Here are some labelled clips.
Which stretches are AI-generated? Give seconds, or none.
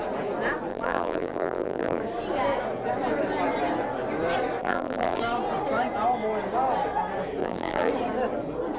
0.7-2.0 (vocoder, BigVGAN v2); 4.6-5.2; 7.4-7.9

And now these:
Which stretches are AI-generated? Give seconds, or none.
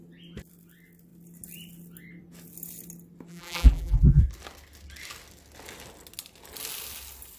3.3-4.2 (vocoder, BigVGAN v2)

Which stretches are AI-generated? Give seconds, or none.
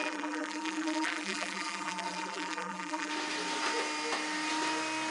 0.0-3.1 (vocoder, BigVGAN v2)